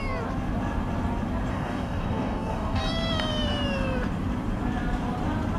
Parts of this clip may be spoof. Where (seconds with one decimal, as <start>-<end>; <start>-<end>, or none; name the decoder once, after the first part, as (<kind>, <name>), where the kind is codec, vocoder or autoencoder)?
1.5-2.8 (codec, DAC)